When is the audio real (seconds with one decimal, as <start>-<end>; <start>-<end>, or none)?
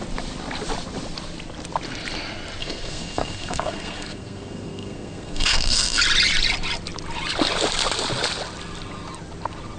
0.0-2.6; 6.0-9.8